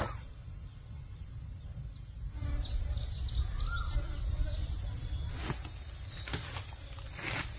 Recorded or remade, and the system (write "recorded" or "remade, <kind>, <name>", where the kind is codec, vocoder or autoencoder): recorded